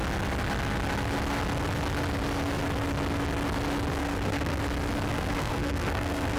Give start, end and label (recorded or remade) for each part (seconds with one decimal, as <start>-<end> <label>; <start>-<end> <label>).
0.0-4.0 recorded; 4.0-4.6 remade; 4.6-5.1 recorded; 5.1-6.4 remade